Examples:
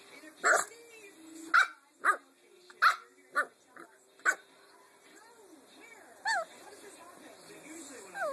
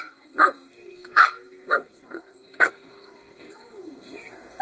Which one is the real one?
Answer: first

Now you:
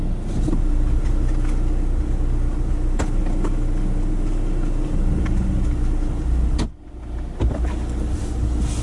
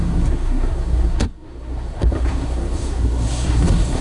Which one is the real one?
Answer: first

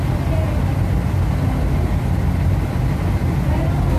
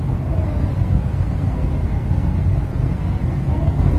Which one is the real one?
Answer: first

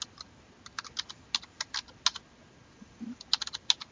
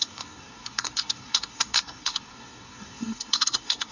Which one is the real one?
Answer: first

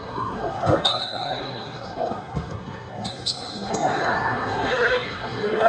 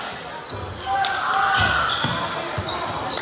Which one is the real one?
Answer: second